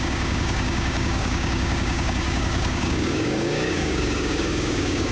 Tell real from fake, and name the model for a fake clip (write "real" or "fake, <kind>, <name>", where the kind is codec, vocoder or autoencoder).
fake, codec, DAC